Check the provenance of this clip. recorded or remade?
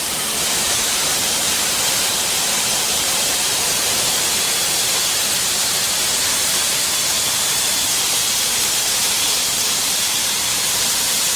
remade